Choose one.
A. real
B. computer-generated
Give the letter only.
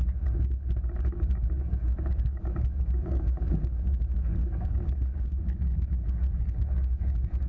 B